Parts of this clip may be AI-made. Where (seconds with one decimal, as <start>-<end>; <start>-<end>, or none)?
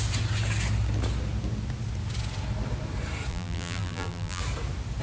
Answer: 3.3-4.4